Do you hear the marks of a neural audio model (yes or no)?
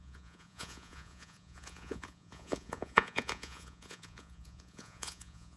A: yes